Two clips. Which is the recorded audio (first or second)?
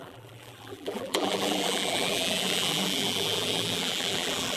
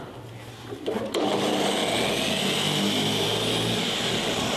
second